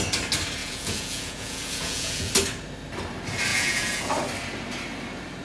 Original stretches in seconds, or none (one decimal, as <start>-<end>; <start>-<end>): 0.0-0.6; 2.3-3.5; 4.1-5.4